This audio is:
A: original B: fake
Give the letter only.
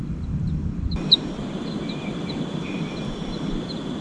B